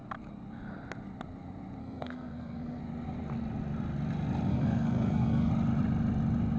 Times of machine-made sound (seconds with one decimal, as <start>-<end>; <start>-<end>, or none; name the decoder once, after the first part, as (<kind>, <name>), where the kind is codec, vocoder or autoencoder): 1.8-2.8 (codec, SNAC); 4.5-5.5